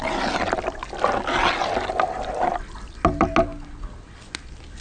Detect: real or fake real